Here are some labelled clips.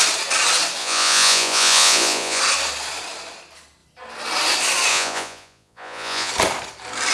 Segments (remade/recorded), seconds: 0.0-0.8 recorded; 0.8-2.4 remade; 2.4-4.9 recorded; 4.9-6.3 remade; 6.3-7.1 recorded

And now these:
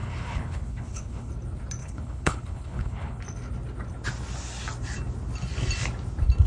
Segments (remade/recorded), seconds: 0.0-1.3 remade; 1.3-1.8 recorded; 1.8-3.2 remade; 3.2-6.5 recorded

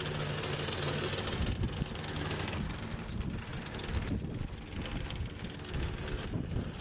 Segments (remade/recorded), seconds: 0.0-3.5 recorded; 3.5-4.2 remade; 4.2-6.8 recorded

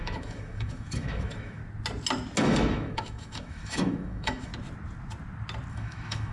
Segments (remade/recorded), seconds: 0.0-1.6 remade; 1.6-2.4 recorded; 2.4-4.5 remade; 4.5-5.7 recorded; 5.7-6.3 remade

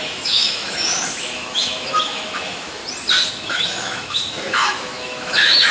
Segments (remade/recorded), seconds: 0.0-2.8 remade; 2.8-3.3 recorded; 3.3-5.7 remade